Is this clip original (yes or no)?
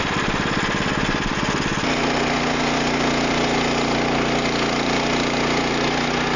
yes